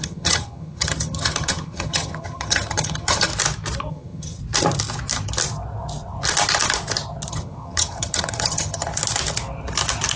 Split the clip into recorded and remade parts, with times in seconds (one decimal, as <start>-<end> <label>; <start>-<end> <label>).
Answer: 0.0-3.3 remade; 3.3-3.9 recorded; 3.9-4.4 remade; 4.4-7.3 recorded; 7.3-8.9 remade; 8.9-10.2 recorded